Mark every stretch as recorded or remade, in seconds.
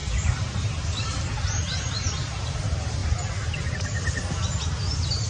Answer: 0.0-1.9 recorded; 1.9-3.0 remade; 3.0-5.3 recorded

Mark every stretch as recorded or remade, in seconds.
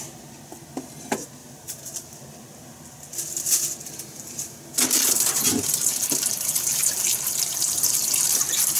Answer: 0.0-1.4 recorded; 1.4-2.2 remade; 2.2-3.8 recorded; 3.8-8.8 remade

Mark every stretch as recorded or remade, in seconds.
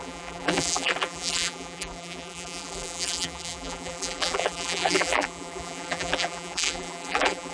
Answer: 0.0-7.5 remade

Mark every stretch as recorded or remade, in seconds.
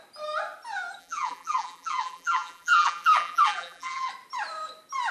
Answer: 0.0-1.0 recorded; 1.0-4.1 remade; 4.1-5.1 recorded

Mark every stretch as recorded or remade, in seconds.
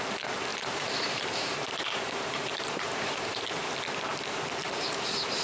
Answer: 0.0-0.5 recorded; 0.5-3.7 remade; 3.7-5.4 recorded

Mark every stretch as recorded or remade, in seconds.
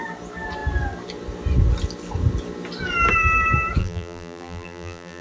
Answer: 0.0-3.8 recorded; 3.8-5.2 remade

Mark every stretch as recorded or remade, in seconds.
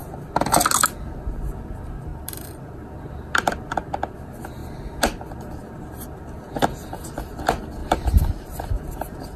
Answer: 0.0-2.1 recorded; 2.1-2.8 remade; 2.8-7.8 recorded; 7.8-9.4 remade